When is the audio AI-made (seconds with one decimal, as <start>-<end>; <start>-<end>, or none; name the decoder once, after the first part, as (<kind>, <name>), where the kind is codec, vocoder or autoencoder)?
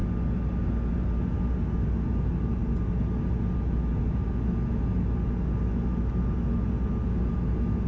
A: none